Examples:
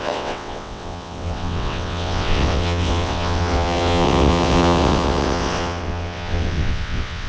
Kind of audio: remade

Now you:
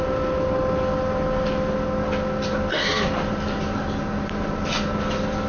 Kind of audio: recorded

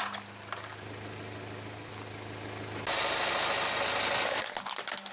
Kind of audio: recorded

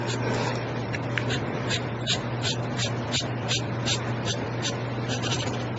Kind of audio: remade